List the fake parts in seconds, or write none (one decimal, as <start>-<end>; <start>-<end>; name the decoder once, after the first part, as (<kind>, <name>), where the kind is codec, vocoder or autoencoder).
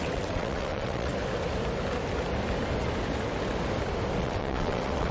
0.0-1.1 (vocoder, WaveNeXt); 4.2-5.1